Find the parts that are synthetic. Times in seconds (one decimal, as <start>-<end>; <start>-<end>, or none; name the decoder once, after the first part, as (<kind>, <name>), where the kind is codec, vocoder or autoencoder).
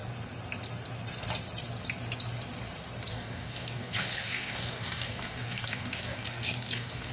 3.1-7.1 (codec, DAC)